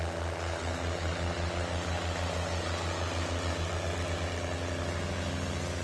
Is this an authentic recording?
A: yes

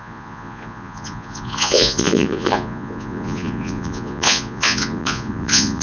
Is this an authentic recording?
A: no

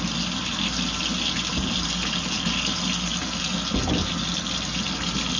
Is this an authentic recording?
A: yes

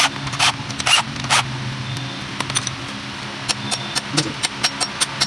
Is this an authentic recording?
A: yes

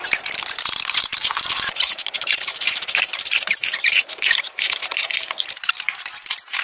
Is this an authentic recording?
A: no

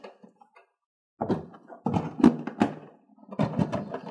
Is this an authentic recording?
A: yes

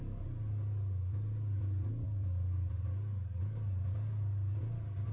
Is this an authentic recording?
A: yes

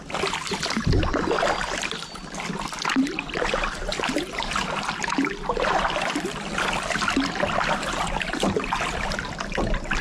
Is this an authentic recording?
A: yes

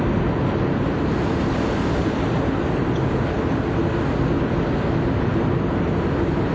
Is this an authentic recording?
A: yes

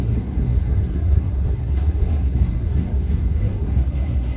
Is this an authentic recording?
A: no